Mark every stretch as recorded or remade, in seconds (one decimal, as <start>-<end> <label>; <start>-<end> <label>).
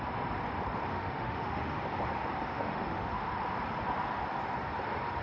0.0-0.9 recorded; 0.9-1.8 remade; 1.8-2.5 recorded; 2.5-3.2 remade; 3.2-5.2 recorded